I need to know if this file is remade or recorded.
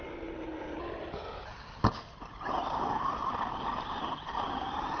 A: recorded